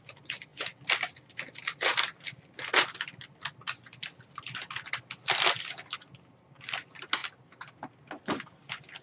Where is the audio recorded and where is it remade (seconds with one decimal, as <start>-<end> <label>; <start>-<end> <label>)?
0.0-9.0 recorded